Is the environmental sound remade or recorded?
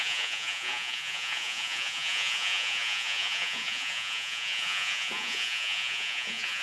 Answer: remade